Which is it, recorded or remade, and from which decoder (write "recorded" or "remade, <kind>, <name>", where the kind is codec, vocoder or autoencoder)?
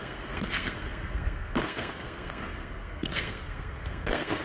remade, codec, SNAC